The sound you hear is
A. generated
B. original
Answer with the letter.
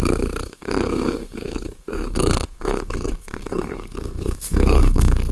A